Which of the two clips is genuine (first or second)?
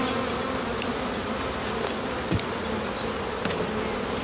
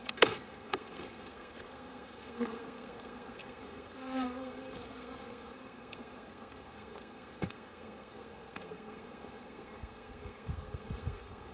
first